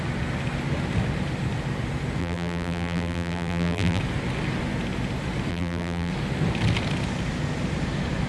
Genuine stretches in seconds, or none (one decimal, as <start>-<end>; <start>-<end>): 0.0-2.2; 4.0-5.5; 6.1-8.3